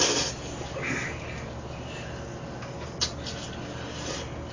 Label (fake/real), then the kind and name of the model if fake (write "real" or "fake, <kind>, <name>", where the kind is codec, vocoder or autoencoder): real